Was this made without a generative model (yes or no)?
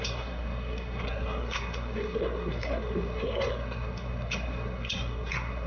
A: no